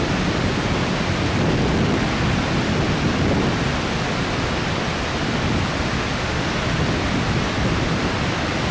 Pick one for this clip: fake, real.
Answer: real